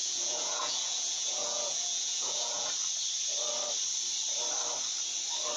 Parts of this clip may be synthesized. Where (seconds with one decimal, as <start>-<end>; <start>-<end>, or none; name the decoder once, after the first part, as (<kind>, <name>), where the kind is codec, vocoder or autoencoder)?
0.0-2.7 (vocoder, Vocos)